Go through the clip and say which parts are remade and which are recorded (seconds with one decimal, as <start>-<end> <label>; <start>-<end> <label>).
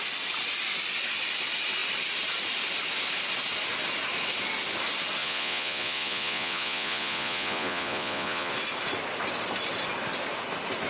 0.0-5.2 recorded; 5.2-8.5 remade; 8.5-10.9 recorded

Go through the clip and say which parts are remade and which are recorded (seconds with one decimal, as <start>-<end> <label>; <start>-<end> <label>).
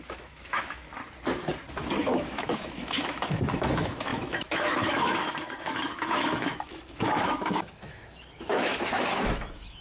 0.0-0.8 remade; 0.8-2.0 recorded; 2.0-9.8 remade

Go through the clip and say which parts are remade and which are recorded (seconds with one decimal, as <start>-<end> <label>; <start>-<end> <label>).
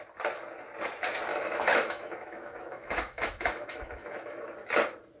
0.0-1.3 recorded; 1.3-4.4 remade; 4.4-5.2 recorded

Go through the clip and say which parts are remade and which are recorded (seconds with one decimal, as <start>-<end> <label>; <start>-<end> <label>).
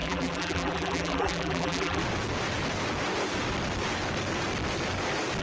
0.0-2.0 remade; 2.0-5.4 recorded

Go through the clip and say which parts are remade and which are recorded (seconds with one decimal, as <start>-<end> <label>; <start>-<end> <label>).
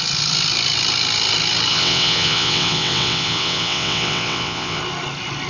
0.0-1.7 recorded; 1.7-4.8 remade; 4.8-5.5 recorded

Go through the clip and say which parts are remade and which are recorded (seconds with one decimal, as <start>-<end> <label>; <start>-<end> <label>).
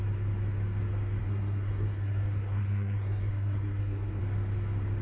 0.0-1.2 recorded; 1.2-4.2 remade; 4.2-5.0 recorded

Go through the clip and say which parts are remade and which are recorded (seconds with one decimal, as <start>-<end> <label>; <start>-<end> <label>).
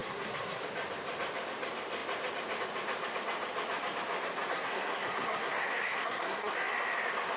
0.0-0.6 remade; 0.6-4.5 recorded; 4.5-6.5 remade; 6.5-7.4 recorded